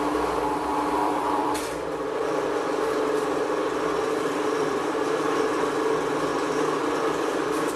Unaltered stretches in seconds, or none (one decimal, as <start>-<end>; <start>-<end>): 6.3-6.9